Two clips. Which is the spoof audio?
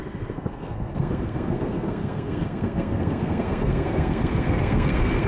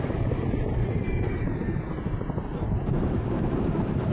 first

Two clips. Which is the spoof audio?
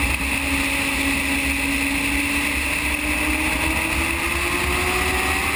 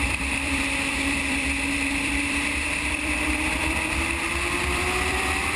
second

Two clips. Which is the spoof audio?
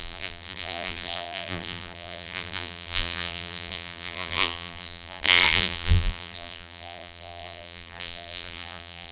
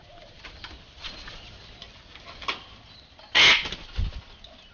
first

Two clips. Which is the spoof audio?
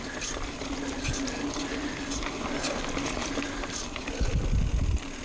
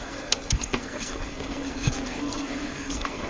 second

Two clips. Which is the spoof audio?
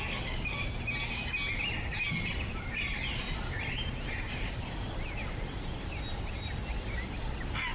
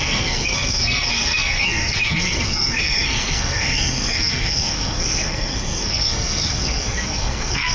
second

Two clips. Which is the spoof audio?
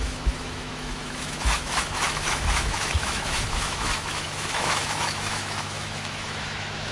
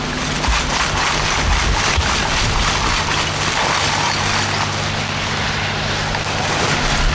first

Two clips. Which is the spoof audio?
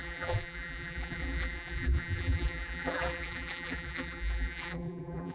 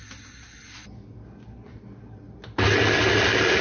first